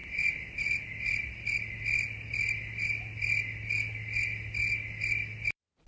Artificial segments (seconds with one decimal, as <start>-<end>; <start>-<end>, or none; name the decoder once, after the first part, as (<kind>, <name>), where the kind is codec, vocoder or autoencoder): none